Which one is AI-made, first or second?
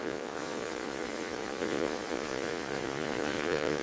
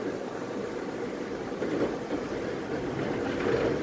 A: first